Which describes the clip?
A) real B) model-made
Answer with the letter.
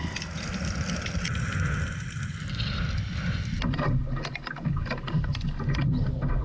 A